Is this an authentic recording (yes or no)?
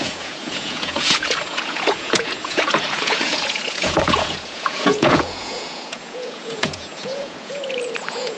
no